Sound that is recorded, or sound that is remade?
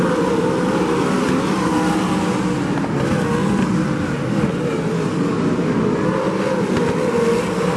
recorded